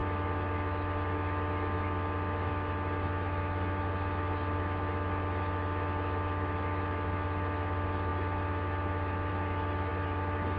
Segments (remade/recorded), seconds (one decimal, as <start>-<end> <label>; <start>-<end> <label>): 0.0-10.6 recorded